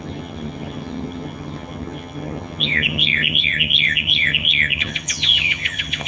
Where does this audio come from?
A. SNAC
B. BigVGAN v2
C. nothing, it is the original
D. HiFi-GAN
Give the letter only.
D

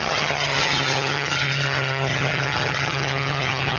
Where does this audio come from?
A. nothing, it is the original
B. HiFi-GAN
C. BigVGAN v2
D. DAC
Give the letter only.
B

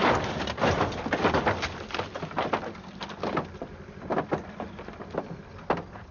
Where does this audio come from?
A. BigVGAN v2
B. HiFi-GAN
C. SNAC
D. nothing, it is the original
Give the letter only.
D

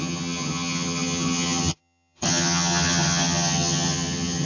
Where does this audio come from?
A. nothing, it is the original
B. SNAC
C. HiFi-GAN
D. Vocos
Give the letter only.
C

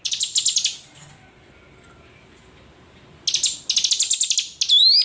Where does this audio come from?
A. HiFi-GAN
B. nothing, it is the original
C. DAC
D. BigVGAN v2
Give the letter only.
B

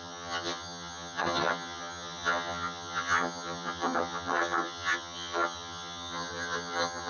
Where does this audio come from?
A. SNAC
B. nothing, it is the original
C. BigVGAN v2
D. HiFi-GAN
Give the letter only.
D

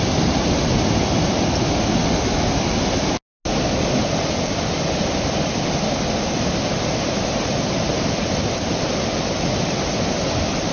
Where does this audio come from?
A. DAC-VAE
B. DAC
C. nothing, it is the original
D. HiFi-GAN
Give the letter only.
C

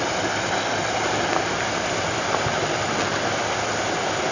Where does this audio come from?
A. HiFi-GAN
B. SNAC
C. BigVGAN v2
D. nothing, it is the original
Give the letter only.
D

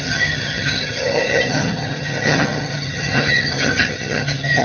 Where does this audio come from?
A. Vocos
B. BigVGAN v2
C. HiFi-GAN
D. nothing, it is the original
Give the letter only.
C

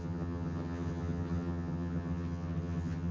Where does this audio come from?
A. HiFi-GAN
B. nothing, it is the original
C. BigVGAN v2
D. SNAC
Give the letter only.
A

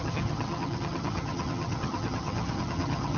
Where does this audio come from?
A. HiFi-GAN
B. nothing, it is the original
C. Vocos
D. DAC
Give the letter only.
A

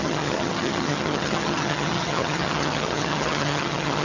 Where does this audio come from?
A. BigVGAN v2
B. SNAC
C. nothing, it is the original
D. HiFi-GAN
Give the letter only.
D